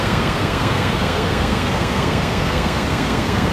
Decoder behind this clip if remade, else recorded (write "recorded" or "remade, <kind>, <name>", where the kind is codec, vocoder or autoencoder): remade, codec, SNAC